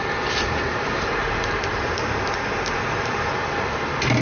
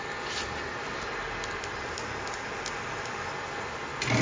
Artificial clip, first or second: first